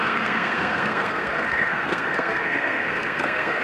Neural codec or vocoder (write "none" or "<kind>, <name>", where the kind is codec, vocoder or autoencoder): codec, SNAC